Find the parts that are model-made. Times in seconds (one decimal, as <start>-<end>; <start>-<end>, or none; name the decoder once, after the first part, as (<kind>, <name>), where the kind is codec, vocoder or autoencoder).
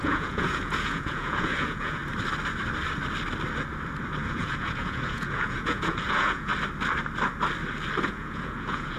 0.0-2.0 (vocoder, Vocos); 4.3-6.5; 8.0-9.0